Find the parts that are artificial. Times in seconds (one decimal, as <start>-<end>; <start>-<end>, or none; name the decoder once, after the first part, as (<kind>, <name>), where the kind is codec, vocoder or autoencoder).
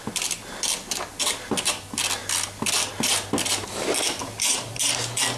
4.2-5.0 (vocoder, BigVGAN v2)